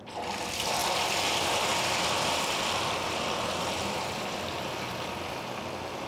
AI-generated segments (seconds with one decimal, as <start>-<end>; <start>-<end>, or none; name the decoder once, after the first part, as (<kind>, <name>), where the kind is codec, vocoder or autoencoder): none